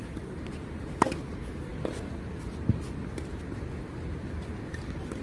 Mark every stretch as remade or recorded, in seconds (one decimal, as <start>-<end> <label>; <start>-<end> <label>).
0.0-5.2 recorded